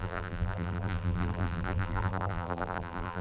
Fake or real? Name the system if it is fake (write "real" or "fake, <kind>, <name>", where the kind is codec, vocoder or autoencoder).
fake, vocoder, BigVGAN v2